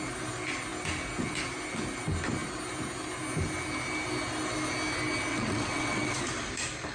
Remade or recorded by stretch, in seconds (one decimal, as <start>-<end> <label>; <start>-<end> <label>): 0.0-5.3 recorded; 5.3-6.2 remade; 6.2-6.9 recorded